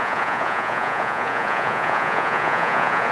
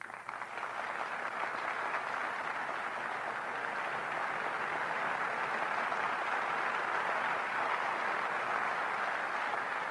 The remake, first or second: first